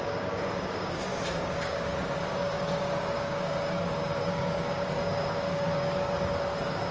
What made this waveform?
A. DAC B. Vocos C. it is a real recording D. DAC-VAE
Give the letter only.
A